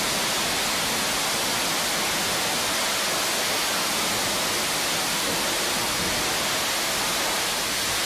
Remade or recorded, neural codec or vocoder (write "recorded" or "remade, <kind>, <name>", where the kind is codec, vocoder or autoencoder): recorded